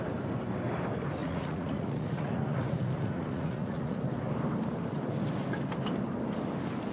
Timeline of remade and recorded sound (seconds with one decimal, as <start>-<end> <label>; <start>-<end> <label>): 0.0-1.2 recorded; 1.2-4.0 remade; 4.0-6.9 recorded